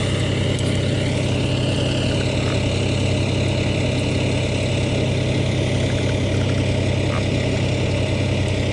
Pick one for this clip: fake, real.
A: real